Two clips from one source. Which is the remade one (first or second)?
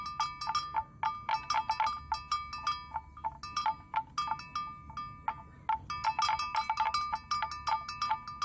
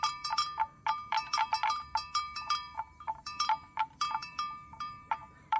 second